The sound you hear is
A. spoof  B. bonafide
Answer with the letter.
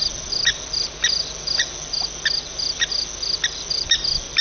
B